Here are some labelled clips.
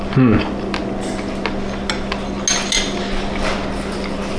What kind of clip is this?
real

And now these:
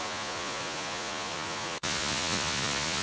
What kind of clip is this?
fake